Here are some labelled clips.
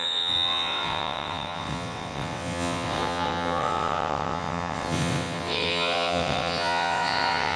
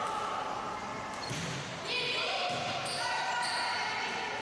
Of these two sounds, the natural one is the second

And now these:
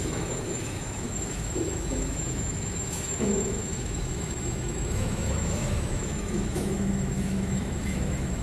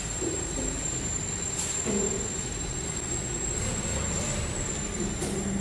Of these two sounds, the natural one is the second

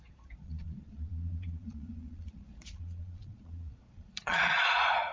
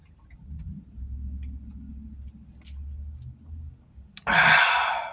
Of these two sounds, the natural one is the second